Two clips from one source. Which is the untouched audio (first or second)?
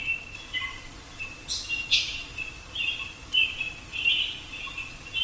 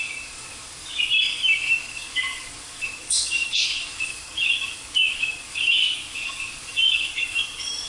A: first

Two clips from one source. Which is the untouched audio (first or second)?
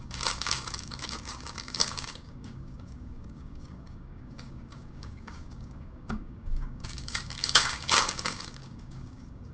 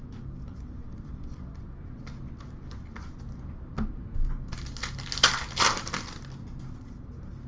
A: second